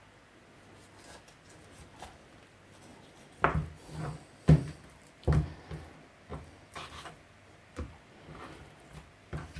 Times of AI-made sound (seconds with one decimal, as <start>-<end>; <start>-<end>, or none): none